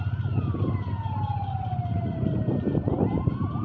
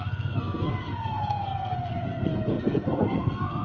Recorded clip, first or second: first